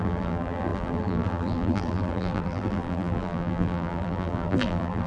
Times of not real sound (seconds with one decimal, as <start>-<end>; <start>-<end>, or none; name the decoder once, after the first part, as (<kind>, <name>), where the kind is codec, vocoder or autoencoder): 0.0-5.1 (vocoder, BigVGAN v2)